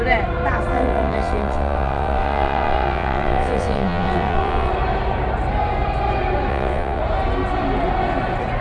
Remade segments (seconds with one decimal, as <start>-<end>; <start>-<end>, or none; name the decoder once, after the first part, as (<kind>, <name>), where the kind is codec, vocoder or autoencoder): 0.7-4.7 (vocoder, WaveNeXt); 6.5-7.0